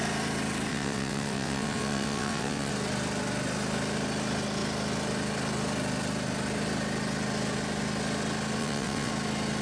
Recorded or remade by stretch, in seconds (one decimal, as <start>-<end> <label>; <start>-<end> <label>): 0.0-0.7 recorded; 0.7-2.7 remade; 2.7-8.6 recorded; 8.6-9.1 remade; 9.1-9.6 recorded